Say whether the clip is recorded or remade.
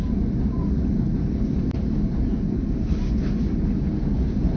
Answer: recorded